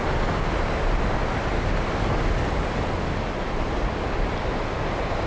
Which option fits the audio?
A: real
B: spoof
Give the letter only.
A